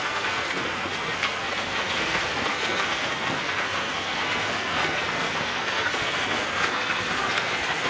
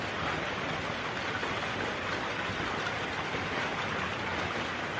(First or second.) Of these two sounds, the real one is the second